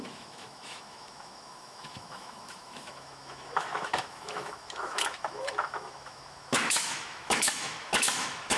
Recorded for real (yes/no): no